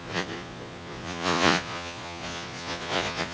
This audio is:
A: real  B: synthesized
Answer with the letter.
B